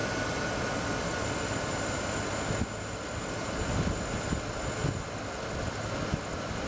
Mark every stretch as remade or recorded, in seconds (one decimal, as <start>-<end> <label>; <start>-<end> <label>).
0.0-6.7 recorded